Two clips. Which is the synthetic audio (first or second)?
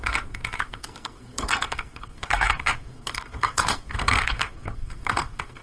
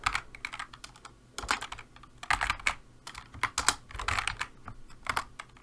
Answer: first